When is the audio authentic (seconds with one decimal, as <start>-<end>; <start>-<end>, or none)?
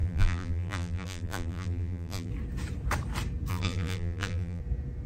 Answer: 2.3-3.5; 4.6-5.1